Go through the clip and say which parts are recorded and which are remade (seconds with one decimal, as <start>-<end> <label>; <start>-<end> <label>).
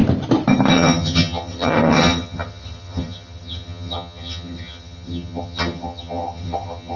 0.0-0.7 recorded; 0.7-7.0 remade